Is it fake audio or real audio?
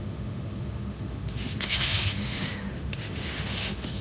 fake